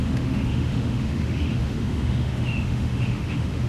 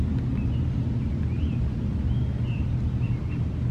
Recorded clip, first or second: second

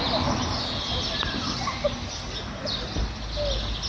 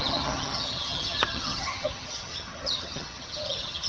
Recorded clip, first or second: first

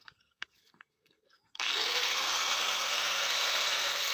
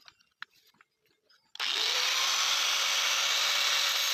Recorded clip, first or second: second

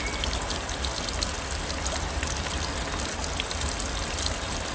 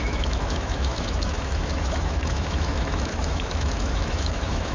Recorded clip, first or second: first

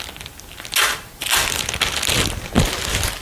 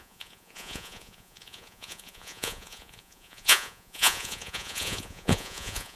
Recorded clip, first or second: first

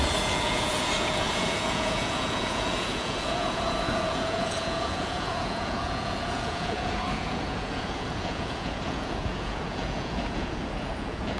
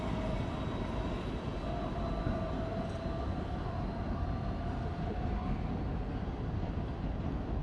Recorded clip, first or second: second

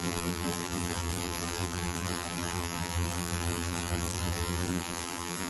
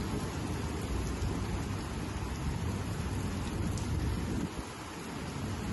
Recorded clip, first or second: second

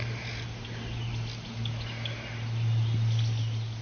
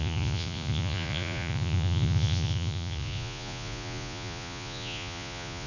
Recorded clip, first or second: first